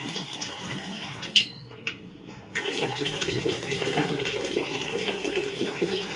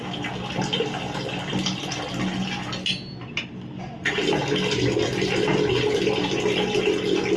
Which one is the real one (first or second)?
second